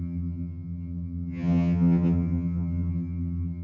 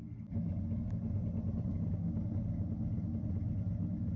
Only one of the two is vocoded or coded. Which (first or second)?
first